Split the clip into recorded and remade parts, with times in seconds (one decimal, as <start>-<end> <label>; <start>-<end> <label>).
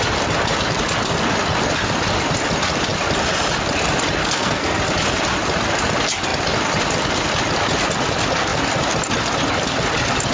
0.0-4.2 recorded; 4.2-4.8 remade; 4.8-10.3 recorded